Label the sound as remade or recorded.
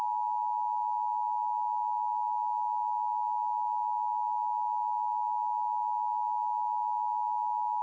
recorded